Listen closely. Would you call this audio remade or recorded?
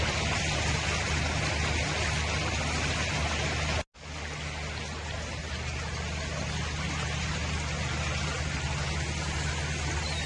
recorded